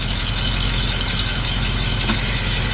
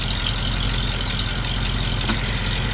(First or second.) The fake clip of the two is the first